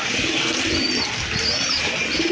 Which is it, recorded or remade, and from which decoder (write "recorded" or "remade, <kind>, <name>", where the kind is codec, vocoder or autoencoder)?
recorded